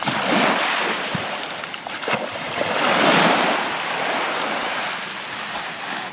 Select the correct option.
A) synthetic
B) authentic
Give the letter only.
B